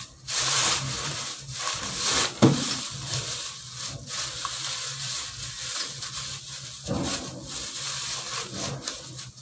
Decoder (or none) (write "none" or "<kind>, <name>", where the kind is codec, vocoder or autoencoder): none